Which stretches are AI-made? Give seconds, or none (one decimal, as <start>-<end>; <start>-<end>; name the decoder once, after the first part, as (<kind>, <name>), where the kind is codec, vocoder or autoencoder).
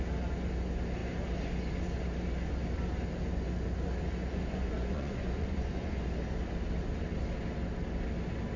4.2-6.0 (vocoder, Vocos)